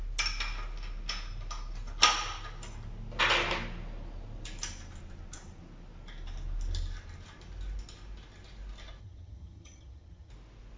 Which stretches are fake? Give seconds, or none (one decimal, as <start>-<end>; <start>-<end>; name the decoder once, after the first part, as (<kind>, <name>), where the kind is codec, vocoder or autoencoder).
9.0-10.3 (vocoder, HiFi-GAN)